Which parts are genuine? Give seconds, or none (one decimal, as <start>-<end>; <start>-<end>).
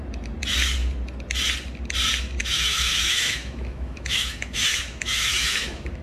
0.0-2.4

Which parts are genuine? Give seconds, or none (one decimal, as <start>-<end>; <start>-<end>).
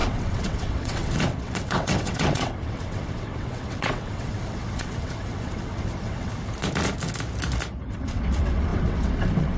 6.3-7.9